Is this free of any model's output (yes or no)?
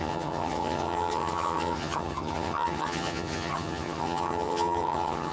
no